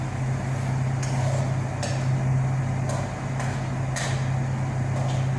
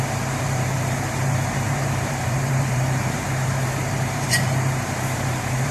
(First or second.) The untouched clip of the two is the first